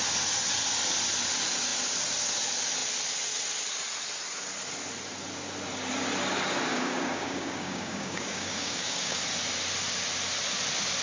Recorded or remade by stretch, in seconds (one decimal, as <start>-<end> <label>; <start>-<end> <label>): 0.0-6.7 recorded; 6.7-9.2 remade; 9.2-11.0 recorded